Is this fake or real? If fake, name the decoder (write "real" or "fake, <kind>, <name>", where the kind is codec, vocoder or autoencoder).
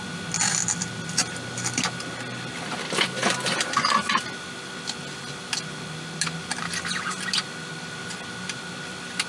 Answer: real